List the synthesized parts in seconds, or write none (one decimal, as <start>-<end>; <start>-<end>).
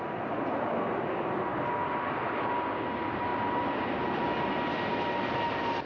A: none